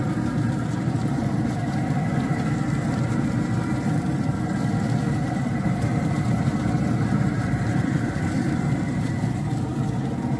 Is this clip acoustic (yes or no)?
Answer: no